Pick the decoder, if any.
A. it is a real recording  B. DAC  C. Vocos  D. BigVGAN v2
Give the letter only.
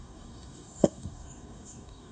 B